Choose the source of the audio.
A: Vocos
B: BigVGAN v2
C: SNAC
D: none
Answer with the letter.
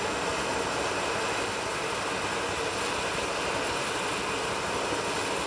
D